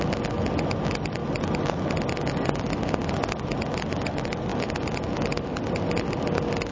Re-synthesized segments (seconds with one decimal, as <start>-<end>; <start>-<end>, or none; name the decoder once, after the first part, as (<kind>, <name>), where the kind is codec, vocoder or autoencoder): none